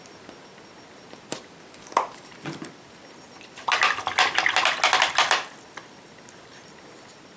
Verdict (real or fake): real